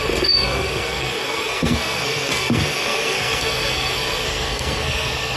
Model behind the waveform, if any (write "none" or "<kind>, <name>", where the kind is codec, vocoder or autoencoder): codec, SNAC